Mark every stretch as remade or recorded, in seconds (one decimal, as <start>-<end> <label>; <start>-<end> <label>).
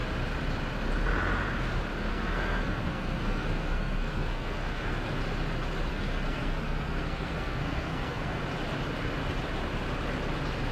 0.0-2.1 recorded; 2.1-5.2 remade; 5.2-5.9 recorded; 5.9-8.4 remade; 8.4-10.7 recorded